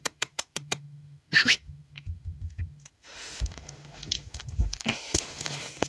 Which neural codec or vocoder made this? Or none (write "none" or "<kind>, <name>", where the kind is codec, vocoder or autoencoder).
autoencoder, DAC-VAE